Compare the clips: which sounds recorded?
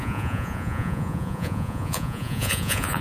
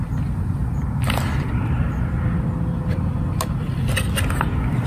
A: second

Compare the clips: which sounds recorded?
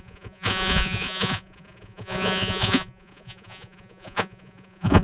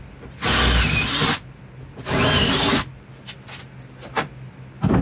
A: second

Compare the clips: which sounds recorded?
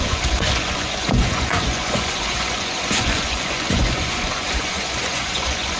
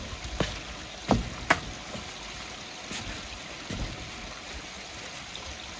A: second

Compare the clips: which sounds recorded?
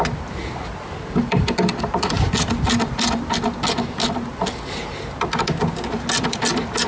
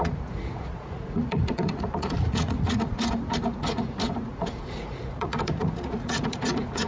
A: first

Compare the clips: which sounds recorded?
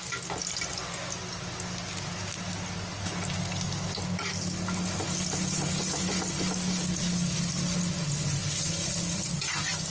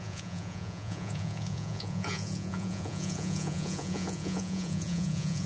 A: first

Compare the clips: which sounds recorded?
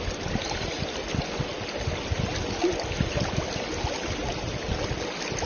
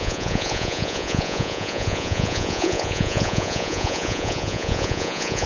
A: first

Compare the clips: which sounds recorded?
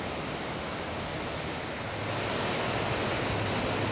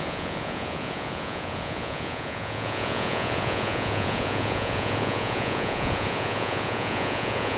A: first